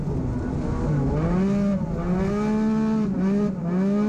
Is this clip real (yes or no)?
yes